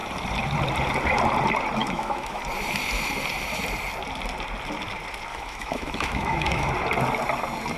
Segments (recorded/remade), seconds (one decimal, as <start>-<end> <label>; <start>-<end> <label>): 0.0-1.8 recorded; 1.8-2.4 remade; 2.4-5.3 recorded; 5.3-6.7 remade; 6.7-7.8 recorded